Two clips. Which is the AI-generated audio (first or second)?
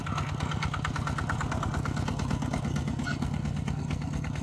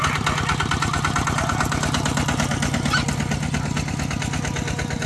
first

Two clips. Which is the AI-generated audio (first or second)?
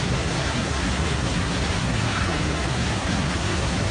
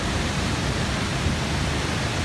first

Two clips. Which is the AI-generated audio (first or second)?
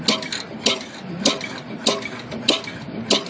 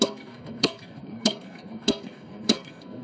second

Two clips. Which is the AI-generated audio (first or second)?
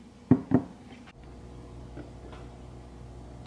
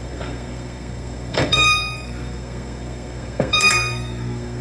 second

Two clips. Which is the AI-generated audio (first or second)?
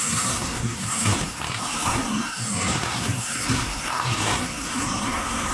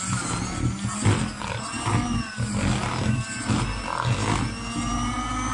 first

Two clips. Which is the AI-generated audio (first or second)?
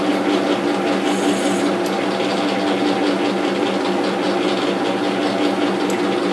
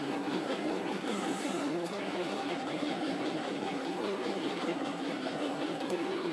second